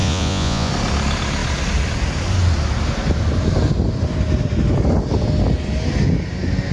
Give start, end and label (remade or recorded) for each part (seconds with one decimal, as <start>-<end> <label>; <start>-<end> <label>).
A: 0.0-0.7 remade; 0.7-6.7 recorded